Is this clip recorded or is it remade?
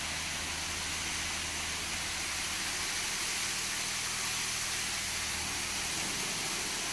recorded